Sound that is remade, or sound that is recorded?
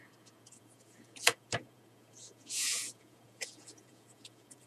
remade